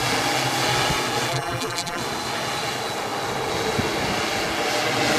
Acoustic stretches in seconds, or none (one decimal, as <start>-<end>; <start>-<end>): 0.0-1.3; 2.0-5.2